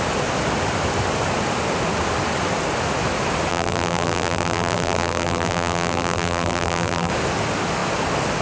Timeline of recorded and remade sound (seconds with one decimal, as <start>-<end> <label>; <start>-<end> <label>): 0.0-3.5 recorded; 3.5-7.1 remade; 7.1-8.4 recorded